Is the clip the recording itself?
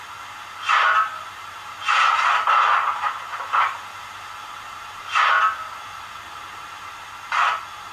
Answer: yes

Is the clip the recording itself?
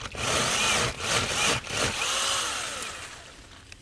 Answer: yes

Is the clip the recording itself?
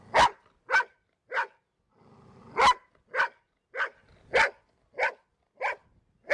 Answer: yes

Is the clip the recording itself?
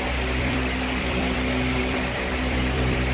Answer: no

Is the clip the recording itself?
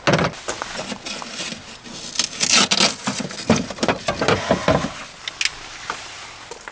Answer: yes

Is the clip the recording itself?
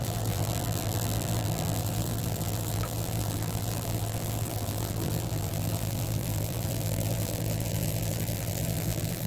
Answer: no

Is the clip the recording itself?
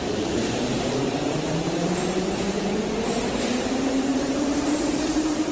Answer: no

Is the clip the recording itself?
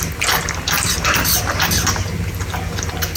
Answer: no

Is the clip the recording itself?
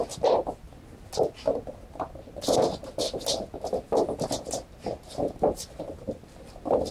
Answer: yes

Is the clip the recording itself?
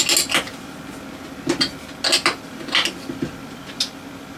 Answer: yes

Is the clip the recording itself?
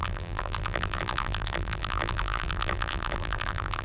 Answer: no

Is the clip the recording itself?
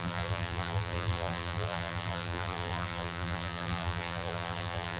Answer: no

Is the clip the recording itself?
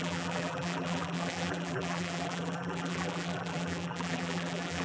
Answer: no